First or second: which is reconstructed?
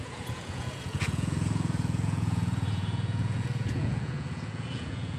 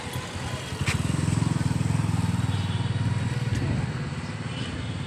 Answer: first